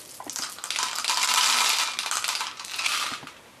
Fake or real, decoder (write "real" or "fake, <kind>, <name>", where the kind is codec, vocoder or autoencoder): real